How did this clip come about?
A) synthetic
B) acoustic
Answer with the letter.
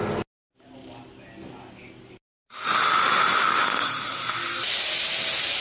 B